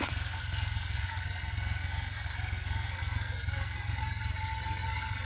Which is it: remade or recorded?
remade